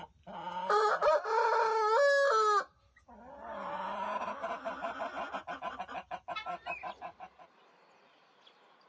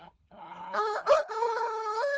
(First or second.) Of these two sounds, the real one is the first